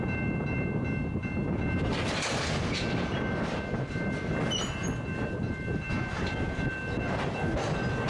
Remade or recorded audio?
recorded